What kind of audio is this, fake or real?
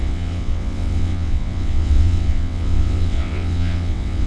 fake